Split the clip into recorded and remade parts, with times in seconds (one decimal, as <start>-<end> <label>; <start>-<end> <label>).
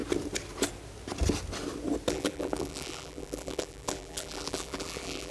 0.0-2.1 recorded; 2.1-5.3 remade